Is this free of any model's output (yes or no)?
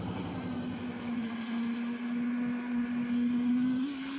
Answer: yes